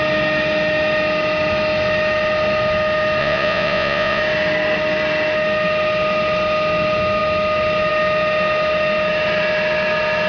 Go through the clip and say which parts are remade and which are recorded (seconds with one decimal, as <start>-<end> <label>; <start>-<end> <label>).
0.0-3.2 recorded; 3.2-4.2 remade; 4.2-10.3 recorded